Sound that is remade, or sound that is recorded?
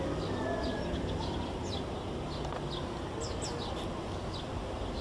recorded